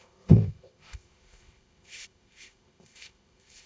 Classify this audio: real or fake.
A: fake